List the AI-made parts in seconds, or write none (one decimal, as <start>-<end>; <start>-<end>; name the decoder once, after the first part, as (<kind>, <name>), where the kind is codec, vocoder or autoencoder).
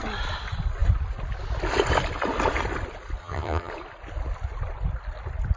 3.2-3.7 (vocoder, HiFi-GAN)